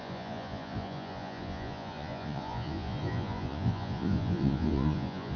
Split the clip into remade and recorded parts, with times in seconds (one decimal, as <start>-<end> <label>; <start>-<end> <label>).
0.0-5.4 remade